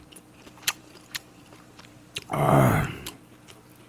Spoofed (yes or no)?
yes